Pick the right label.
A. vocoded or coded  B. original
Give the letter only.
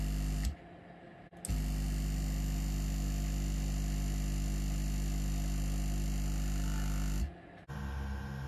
B